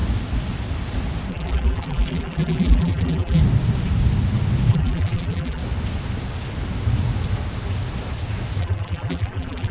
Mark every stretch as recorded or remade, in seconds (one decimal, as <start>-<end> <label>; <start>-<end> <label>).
0.0-1.3 recorded; 1.3-3.4 remade; 3.4-4.7 recorded; 4.7-5.6 remade; 5.6-8.6 recorded; 8.6-9.7 remade